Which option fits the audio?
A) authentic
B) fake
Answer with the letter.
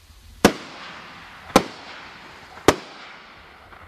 A